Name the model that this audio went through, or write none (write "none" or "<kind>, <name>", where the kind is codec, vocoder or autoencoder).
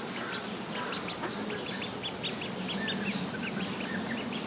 none